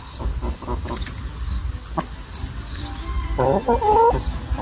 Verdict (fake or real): real